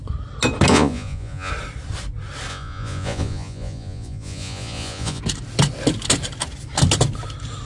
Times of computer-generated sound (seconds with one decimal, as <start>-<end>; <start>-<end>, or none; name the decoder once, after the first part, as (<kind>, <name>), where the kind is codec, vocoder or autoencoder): 0.7-1.5 (vocoder, Vocos); 2.5-5.2